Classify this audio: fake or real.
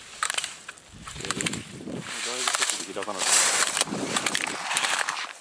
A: fake